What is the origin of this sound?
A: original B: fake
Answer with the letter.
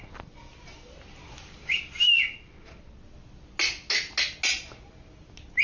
A